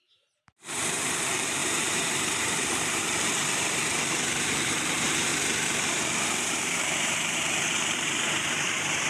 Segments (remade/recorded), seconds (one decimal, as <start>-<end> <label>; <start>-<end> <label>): 0.0-5.3 remade; 5.3-5.9 recorded; 5.9-9.1 remade